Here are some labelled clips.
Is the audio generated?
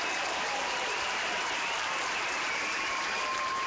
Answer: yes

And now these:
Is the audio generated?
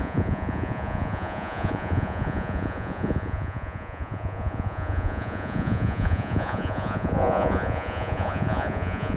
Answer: yes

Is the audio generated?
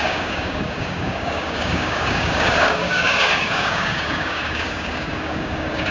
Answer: yes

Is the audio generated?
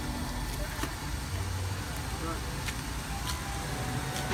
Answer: no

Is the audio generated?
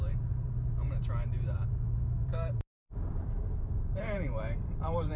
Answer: yes